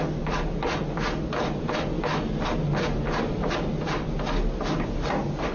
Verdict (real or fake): real